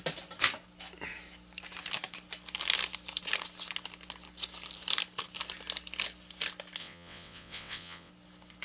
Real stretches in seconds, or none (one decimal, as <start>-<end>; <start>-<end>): 0.0-6.8; 8.1-8.6